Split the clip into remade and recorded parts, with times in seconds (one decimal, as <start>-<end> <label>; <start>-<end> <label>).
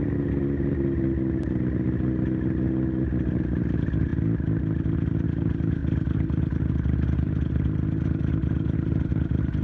0.0-9.6 recorded